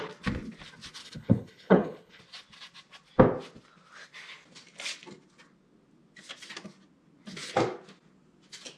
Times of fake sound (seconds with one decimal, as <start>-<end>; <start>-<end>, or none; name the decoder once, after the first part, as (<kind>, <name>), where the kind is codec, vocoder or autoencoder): 1.0-2.2 (codec, HILCodec)